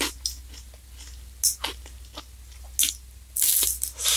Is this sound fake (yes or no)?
no